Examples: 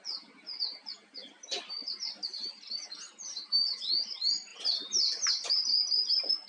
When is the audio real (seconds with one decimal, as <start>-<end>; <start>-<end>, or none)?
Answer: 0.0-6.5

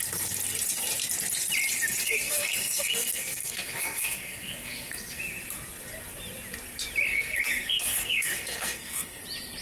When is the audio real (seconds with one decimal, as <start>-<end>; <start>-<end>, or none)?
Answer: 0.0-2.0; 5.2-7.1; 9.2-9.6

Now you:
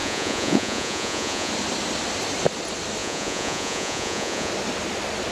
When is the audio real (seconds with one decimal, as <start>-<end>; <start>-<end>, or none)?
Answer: 1.5-3.0; 4.5-5.3